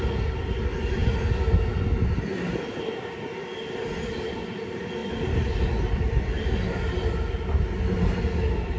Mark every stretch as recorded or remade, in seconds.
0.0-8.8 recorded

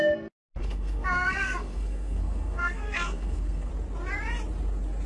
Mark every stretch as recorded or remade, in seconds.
0.0-0.6 recorded; 0.6-3.7 remade; 3.7-5.1 recorded

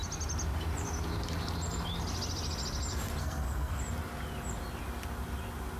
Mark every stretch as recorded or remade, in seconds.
0.0-3.2 recorded; 3.2-3.8 remade; 3.8-5.8 recorded

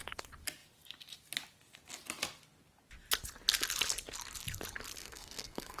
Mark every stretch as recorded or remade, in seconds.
0.0-5.0 recorded; 5.0-5.8 remade

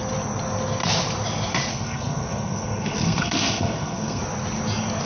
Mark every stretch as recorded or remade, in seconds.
0.0-1.7 recorded; 1.7-4.2 remade; 4.2-5.1 recorded

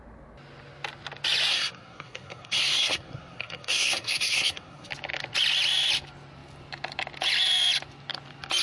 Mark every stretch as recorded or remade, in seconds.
0.0-1.5 recorded; 1.5-4.9 remade; 4.9-8.6 recorded